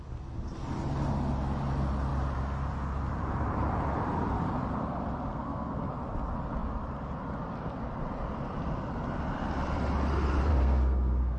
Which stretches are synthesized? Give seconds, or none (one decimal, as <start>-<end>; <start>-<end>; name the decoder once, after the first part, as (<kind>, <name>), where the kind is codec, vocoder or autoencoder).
5.3-5.9 (codec, SNAC); 10.5-11.4